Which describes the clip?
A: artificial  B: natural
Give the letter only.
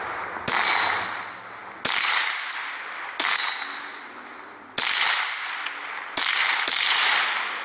B